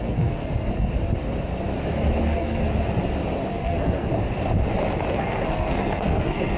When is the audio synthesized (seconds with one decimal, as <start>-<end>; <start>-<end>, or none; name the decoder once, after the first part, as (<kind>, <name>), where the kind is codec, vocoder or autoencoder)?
0.0-0.9 (codec, SNAC); 2.2-2.6; 3.5-4.1; 5.1-6.6